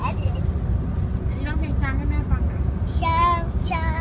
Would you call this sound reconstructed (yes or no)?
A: no